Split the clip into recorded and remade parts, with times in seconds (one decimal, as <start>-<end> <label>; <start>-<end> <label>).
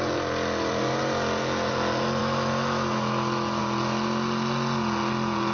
0.0-2.2 recorded; 2.2-3.6 remade; 3.6-5.5 recorded